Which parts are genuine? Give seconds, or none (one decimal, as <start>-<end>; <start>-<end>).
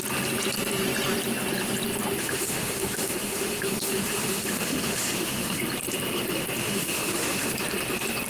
0.0-2.2; 5.6-6.6; 7.5-8.3